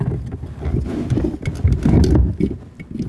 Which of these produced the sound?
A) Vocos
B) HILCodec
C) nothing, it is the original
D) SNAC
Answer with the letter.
C